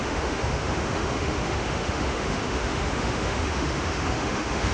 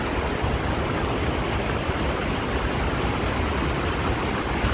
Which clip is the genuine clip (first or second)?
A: second